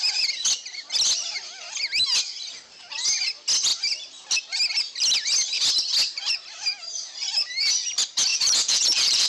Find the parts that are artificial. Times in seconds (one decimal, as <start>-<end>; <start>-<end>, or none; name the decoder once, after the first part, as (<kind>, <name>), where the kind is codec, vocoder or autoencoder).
8.3-9.3 (vocoder, Vocos)

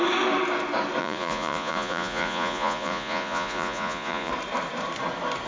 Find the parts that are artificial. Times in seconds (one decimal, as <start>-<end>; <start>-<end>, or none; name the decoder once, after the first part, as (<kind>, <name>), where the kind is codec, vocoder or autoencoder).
1.0-4.3 (vocoder, Vocos)

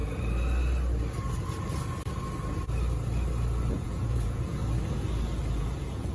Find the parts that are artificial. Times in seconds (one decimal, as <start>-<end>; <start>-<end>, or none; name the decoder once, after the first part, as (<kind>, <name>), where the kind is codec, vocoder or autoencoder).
3.7-4.6 (vocoder, Vocos); 5.6-6.1

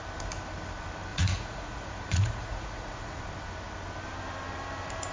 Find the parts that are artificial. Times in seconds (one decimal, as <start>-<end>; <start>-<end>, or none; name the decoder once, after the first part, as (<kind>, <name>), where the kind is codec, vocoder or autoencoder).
1.1-3.2 (vocoder, Vocos)